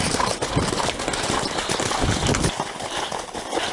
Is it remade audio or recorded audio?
recorded